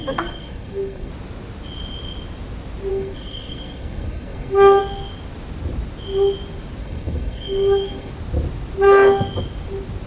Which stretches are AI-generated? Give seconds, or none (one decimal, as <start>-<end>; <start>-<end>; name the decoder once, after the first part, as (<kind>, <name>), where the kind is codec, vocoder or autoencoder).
0.0-1.1 (codec, SNAC); 2.9-4.8; 6.8-8.1